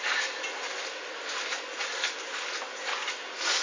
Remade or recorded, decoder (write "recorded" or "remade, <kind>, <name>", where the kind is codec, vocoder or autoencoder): recorded